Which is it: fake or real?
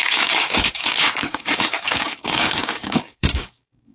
fake